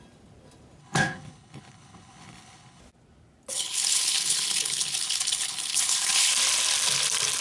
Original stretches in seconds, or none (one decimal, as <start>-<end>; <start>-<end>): 0.0-0.8; 2.8-3.5; 6.3-7.4